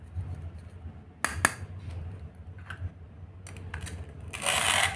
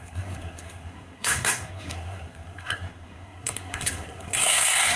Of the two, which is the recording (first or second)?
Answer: first